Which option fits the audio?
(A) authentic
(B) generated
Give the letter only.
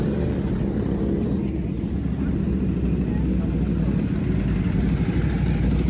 A